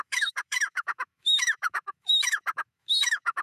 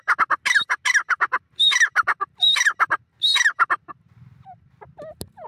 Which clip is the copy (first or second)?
first